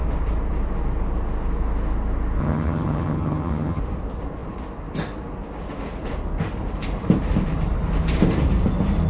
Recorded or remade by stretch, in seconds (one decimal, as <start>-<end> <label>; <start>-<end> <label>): 0.0-2.4 recorded; 2.4-3.8 remade; 3.8-9.1 recorded